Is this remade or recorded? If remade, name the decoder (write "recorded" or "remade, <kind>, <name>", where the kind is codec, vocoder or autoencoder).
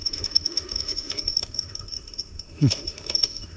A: remade, autoencoder, DAC-VAE